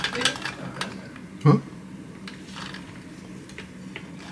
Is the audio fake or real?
real